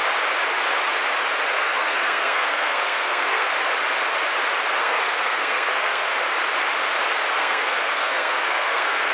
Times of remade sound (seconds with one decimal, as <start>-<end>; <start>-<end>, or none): 1.5-3.5; 4.8-6.1; 7.4-9.1